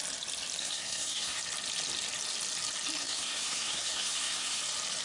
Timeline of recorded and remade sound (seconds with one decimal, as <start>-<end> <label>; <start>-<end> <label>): 0.0-0.6 recorded; 0.6-1.4 remade; 1.4-3.0 recorded; 3.0-4.6 remade; 4.6-5.0 recorded

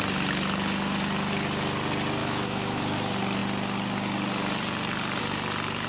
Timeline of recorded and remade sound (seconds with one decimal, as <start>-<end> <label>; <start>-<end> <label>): 0.0-2.2 recorded; 2.2-2.8 remade; 2.8-5.9 recorded

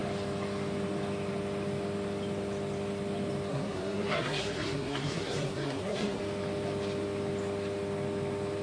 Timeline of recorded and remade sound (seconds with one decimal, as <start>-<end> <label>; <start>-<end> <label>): 0.0-3.5 recorded; 3.5-6.2 remade; 6.2-8.6 recorded

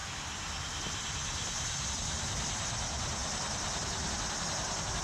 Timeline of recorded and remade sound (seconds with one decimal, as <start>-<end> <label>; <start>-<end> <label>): 0.0-5.0 recorded

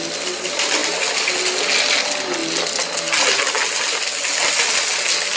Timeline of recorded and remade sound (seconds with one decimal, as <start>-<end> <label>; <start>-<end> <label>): 0.0-5.4 recorded

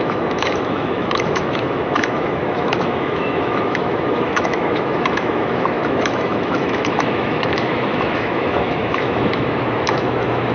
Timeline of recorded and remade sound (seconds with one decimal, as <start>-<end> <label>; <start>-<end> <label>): 0.0-10.5 remade